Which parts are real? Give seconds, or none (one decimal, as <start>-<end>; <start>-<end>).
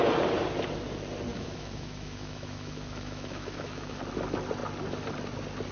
0.0-1.3; 4.0-5.7